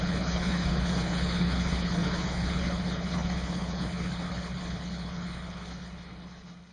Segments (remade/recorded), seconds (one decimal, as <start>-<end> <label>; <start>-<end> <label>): 0.0-6.7 remade